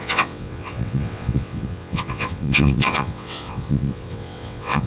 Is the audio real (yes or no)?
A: no